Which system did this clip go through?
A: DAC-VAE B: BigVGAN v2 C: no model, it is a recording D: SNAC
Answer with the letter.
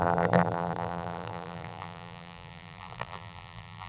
B